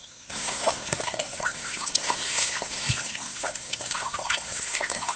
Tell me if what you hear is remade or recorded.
remade